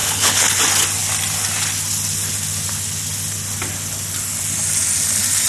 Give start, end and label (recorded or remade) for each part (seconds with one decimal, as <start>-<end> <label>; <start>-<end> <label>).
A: 0.0-0.6 remade; 0.6-5.5 recorded